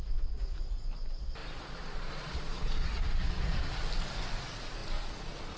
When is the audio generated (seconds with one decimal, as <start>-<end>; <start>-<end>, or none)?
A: 1.4-3.7